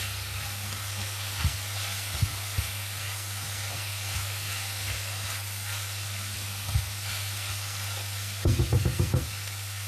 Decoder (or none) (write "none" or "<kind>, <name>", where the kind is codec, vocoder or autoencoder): codec, SNAC